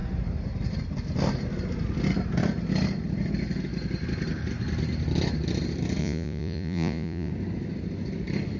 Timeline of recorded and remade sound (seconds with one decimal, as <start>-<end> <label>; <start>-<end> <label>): 0.0-6.0 recorded; 6.0-7.3 remade; 7.3-8.6 recorded